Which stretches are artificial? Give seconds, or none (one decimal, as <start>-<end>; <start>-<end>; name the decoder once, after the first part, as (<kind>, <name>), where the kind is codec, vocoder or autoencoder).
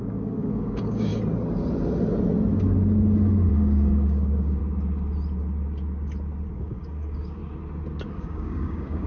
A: 0.0-1.1 (codec, DAC); 3.5-4.6; 6.5-7.4; 8.2-9.1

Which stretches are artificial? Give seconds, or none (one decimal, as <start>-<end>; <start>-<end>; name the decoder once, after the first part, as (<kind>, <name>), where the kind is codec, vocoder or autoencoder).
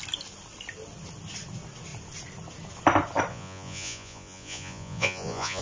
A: 3.3-5.6 (vocoder, Vocos)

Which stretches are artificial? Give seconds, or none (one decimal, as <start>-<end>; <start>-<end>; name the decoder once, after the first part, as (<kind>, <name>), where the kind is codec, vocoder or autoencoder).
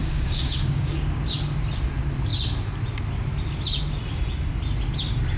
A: 0.0-1.2 (codec, DAC)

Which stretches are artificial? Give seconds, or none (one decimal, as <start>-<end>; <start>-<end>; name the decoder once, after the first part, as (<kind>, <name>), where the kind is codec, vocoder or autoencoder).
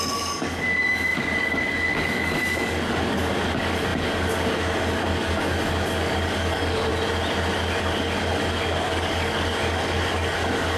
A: 0.0-6.9 (codec, DAC); 7.8-10.8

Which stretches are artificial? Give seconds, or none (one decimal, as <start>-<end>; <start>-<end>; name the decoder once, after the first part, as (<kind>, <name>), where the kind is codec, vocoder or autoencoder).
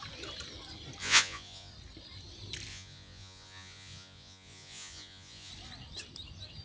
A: 1.0-1.7 (vocoder, Vocos); 2.7-5.5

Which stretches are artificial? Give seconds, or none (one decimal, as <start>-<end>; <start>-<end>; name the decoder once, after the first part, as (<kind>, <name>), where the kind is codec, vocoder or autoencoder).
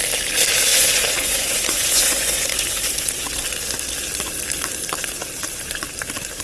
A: 0.7-3.3 (vocoder, Vocos)